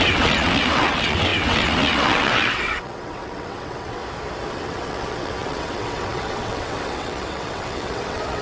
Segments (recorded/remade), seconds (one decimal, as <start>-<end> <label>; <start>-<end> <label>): 0.0-4.0 remade; 4.0-4.5 recorded; 4.5-8.4 remade